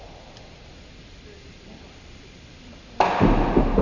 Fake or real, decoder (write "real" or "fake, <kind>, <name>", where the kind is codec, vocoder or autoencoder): real